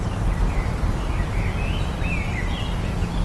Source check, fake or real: real